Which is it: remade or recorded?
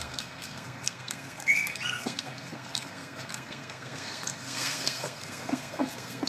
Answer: remade